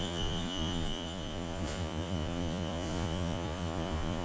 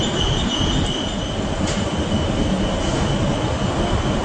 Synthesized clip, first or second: first